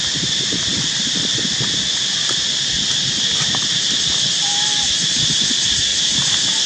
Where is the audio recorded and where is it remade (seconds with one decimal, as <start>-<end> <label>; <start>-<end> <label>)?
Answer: 0.0-1.3 remade; 1.3-4.3 recorded; 4.3-5.9 remade; 5.9-6.7 recorded